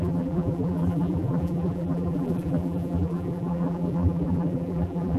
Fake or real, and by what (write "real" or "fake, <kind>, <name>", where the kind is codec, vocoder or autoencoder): fake, vocoder, BigVGAN v2